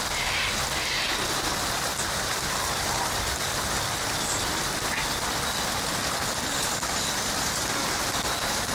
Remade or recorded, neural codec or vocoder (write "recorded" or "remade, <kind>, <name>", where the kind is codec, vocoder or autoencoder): recorded